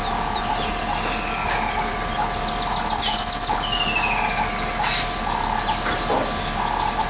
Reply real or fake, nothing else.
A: real